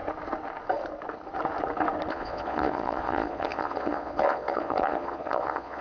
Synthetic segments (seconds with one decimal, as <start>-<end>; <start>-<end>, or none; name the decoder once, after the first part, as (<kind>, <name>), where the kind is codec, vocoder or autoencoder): 2.1-5.8 (vocoder, Vocos)